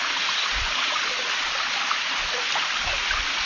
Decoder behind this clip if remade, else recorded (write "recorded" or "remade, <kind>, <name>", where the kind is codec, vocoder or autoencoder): recorded